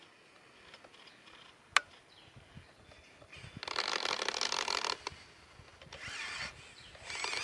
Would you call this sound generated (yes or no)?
no